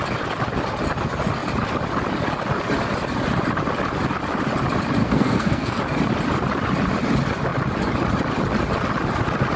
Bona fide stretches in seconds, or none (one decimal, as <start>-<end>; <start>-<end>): 0.0-5.0; 5.8-9.6